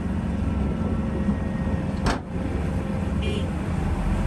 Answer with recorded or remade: recorded